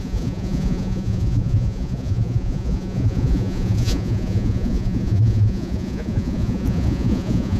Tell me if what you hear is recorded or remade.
remade